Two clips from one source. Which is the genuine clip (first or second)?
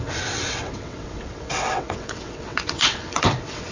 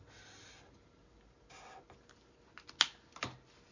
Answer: second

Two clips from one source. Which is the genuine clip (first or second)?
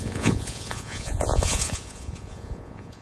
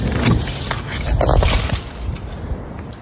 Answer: second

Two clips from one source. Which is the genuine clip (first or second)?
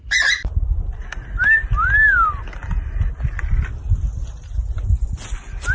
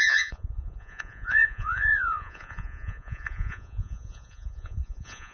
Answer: first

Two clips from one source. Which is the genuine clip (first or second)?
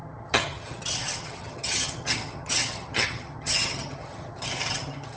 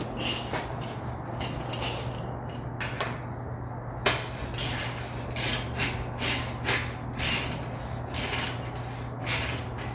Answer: second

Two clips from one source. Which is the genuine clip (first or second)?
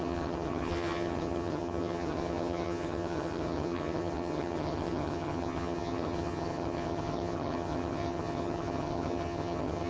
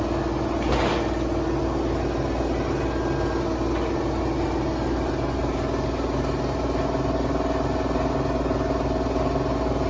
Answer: second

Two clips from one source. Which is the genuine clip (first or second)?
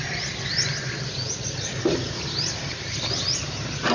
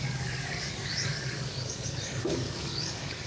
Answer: first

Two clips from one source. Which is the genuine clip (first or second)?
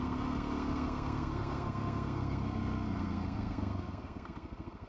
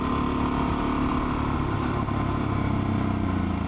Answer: second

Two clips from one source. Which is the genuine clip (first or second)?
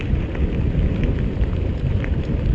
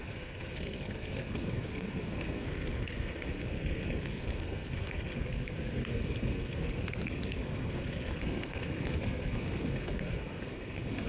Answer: first